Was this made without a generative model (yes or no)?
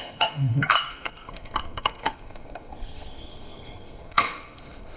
no